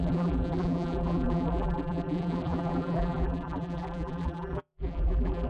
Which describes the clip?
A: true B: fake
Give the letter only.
B